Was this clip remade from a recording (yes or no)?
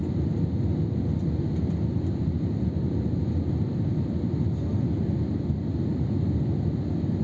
no